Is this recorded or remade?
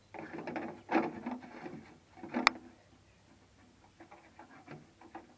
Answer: recorded